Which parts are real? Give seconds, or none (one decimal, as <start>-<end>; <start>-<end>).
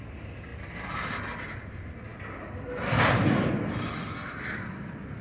0.0-5.2